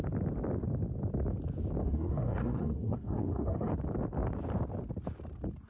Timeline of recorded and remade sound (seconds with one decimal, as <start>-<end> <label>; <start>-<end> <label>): 0.0-1.8 recorded; 1.8-3.7 remade; 3.7-5.7 recorded